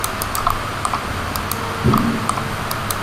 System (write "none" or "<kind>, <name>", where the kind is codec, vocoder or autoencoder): none